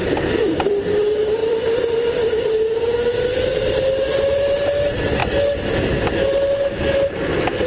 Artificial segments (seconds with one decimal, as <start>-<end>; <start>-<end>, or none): none